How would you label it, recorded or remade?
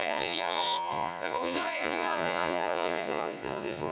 remade